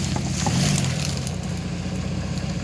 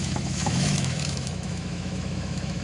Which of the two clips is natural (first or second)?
first